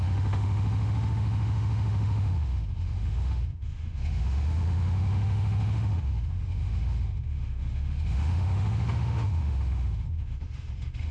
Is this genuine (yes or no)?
no